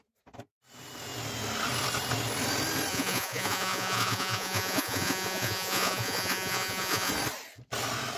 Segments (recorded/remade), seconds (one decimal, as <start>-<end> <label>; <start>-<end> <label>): 0.0-2.9 recorded; 2.9-7.1 remade; 7.1-8.2 recorded

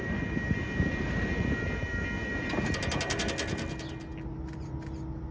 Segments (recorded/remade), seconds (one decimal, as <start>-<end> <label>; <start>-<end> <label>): 0.0-5.3 recorded